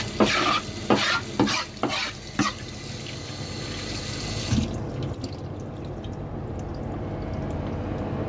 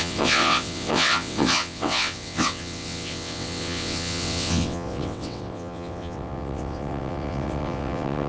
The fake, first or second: second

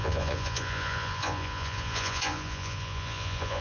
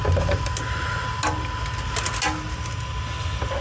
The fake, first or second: first